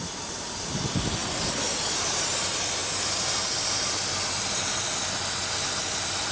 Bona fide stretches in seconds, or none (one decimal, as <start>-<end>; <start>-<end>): 0.0-6.3